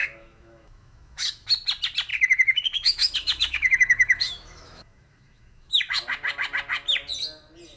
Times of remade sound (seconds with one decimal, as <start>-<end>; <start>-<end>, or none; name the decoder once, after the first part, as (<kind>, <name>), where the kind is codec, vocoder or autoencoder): 0.0-1.5 (autoencoder, DAC-VAE); 2.1-5.9